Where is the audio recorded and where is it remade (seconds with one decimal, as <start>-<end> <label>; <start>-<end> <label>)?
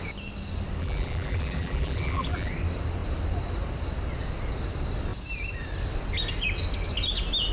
0.0-0.8 recorded; 0.8-2.5 remade; 2.5-7.5 recorded